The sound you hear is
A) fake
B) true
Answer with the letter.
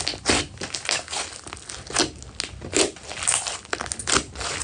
B